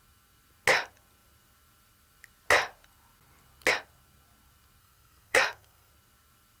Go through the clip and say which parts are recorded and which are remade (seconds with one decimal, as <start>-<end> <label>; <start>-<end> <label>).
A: 0.0-4.8 recorded; 4.8-5.9 remade; 5.9-6.6 recorded